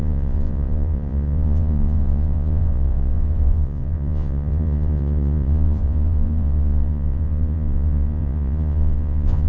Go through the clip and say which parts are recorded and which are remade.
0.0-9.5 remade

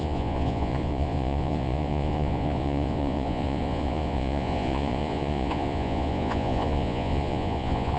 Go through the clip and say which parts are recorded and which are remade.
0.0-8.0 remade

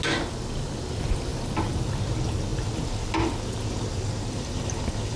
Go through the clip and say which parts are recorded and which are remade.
0.0-5.2 recorded

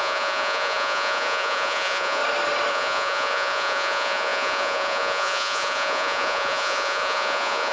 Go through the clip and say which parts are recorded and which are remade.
0.0-2.2 remade; 2.2-2.7 recorded; 2.7-7.7 remade

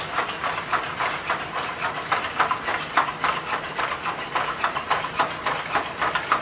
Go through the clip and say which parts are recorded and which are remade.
0.0-6.4 recorded